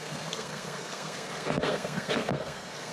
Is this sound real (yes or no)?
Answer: no